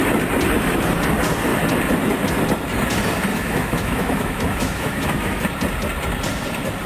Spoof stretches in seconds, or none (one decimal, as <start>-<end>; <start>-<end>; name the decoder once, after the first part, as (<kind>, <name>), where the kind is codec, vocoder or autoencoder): 3.3-5.4 (autoencoder, DAC-VAE)